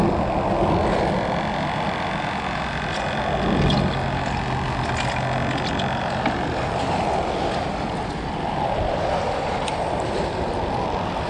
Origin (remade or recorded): recorded